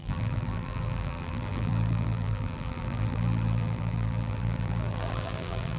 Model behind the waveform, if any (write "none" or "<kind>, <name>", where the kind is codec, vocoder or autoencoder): vocoder, BigVGAN v2